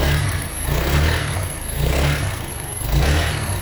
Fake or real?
fake